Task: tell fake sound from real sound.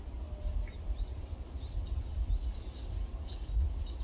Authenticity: real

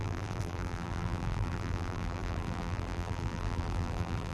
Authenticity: fake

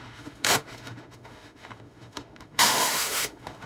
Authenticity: fake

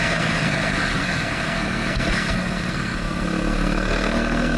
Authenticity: fake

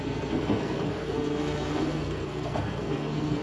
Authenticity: fake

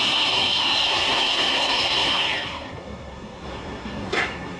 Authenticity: fake